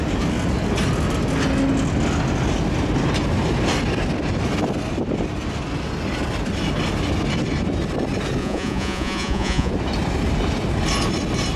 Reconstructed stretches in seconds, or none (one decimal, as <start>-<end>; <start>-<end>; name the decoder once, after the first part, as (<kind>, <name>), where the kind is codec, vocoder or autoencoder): 8.4-9.7 (vocoder, Vocos)